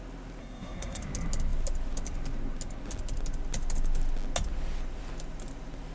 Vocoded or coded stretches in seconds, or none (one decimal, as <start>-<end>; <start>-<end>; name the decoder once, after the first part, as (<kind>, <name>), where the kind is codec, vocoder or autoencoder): 0.4-1.0 (codec, SNAC)